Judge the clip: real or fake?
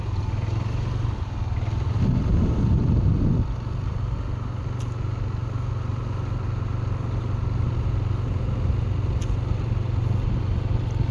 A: real